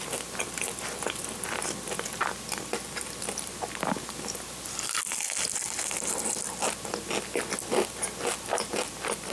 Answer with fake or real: real